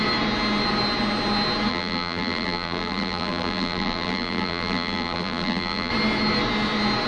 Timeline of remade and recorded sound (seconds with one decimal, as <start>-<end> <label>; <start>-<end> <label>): 0.0-1.7 recorded; 1.7-5.9 remade; 5.9-7.1 recorded